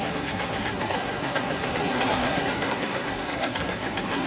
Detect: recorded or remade remade